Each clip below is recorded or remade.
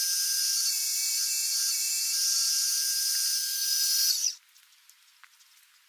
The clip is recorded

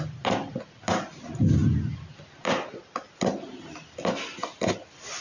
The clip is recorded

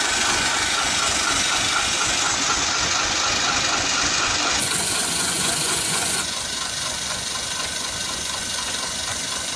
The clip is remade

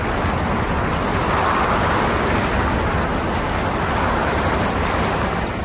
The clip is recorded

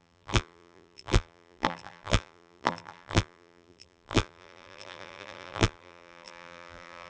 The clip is remade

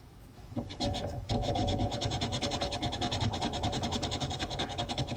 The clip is remade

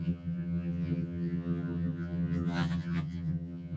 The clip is remade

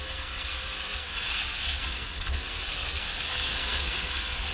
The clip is remade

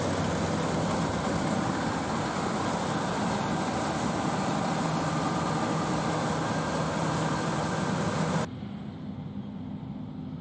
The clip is recorded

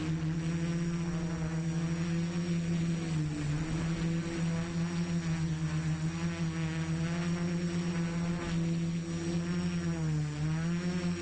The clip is recorded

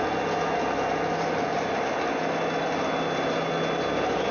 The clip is recorded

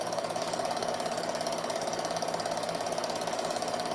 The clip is remade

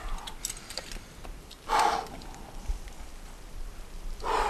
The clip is remade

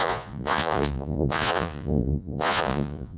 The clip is remade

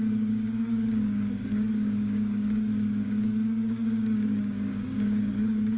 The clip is remade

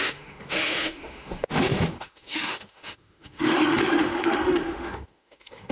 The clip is remade